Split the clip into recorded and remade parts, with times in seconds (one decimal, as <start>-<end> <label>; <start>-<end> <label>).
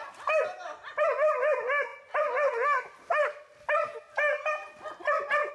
0.0-5.5 recorded